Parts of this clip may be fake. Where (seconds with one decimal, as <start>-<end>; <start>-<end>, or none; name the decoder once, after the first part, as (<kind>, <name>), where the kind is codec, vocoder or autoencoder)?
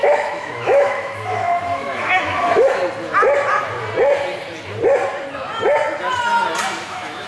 0.0-2.8 (autoencoder, DAC-VAE); 6.8-7.3